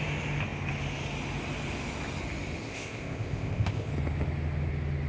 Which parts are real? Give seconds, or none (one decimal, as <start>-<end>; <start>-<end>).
0.0-2.6; 3.9-5.1